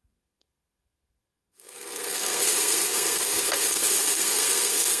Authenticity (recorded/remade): remade